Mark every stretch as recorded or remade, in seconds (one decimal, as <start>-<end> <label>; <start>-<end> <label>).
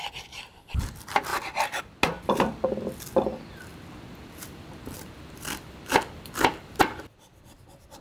0.0-1.3 recorded; 1.3-1.8 remade; 1.8-3.7 recorded; 3.7-8.0 remade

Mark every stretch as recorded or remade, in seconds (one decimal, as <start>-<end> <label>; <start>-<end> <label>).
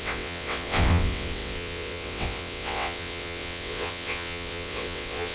0.0-5.3 remade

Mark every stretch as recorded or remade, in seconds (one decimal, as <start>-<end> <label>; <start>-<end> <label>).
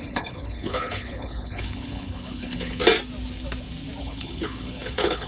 0.0-2.8 remade; 2.8-4.0 recorded; 4.0-5.3 remade